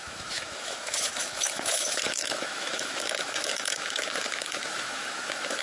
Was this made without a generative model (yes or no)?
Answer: no